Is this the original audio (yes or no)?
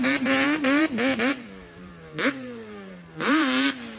no